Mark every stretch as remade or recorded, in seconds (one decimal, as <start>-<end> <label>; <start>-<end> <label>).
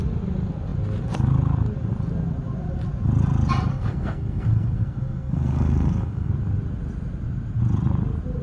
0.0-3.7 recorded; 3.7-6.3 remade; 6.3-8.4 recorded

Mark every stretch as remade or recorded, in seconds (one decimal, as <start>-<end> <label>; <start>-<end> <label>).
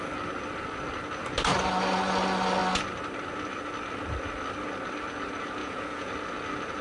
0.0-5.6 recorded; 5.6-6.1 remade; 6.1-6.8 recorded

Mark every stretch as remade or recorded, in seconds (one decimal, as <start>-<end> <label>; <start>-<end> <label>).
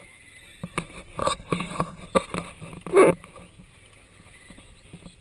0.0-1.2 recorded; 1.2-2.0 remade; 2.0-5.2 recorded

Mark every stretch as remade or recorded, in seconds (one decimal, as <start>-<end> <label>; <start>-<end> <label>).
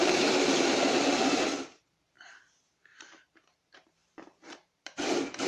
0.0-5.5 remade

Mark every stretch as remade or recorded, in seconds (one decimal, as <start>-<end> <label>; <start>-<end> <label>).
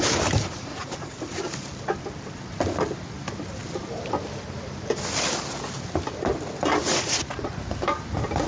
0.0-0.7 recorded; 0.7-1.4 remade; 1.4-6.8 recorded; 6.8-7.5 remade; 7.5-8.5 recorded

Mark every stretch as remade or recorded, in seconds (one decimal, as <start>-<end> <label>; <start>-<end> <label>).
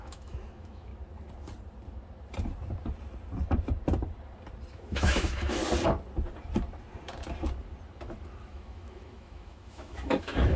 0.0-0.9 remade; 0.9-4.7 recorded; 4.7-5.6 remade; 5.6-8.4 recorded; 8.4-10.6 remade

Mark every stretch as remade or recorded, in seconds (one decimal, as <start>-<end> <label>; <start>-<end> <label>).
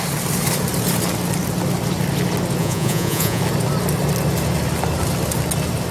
0.0-2.6 recorded; 2.6-3.4 remade; 3.4-5.9 recorded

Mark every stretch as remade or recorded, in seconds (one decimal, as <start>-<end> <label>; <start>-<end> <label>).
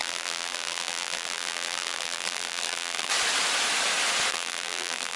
0.0-3.1 remade; 3.1-4.3 recorded; 4.3-5.2 remade